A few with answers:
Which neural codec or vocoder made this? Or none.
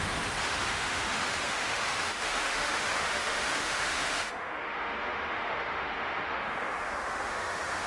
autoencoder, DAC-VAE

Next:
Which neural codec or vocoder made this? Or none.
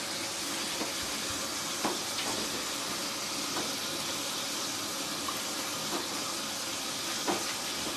none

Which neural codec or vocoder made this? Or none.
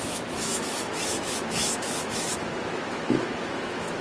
autoencoder, DAC-VAE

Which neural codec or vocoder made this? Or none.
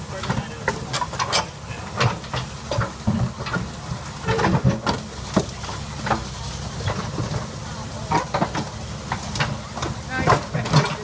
none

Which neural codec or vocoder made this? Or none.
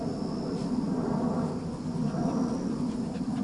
none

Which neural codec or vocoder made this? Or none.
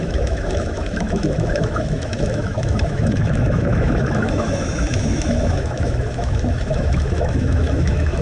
autoencoder, DAC-VAE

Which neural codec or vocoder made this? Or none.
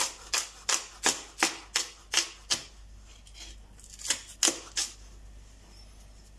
none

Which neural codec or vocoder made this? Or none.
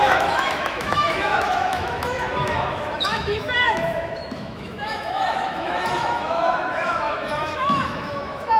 autoencoder, DAC-VAE